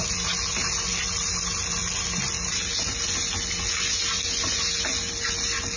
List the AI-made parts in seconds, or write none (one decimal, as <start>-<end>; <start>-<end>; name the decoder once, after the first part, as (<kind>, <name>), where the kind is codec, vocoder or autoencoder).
none